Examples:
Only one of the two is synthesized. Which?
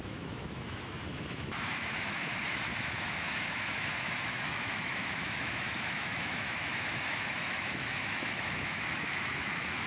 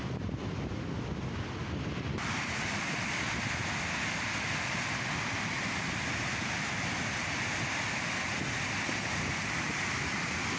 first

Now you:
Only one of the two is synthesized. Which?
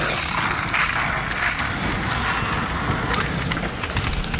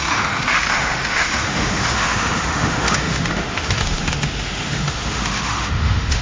second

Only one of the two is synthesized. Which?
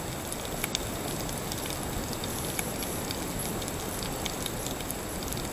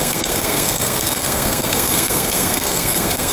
second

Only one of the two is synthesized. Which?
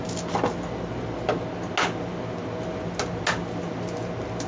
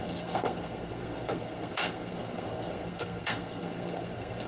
second